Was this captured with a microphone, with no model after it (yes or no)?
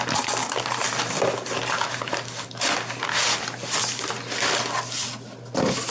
yes